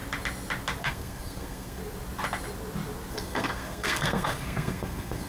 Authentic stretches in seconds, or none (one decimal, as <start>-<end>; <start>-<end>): 0.0-0.8; 1.8-3.1